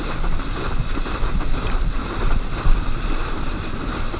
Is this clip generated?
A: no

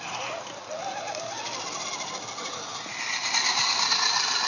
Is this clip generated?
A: no